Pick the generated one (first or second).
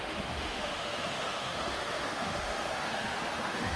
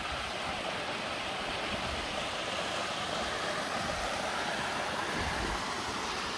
first